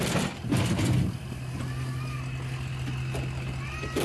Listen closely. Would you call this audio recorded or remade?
recorded